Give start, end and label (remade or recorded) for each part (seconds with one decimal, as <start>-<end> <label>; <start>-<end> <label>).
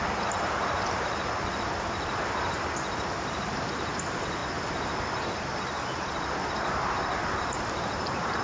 0.0-4.4 remade; 4.4-7.4 recorded; 7.4-8.4 remade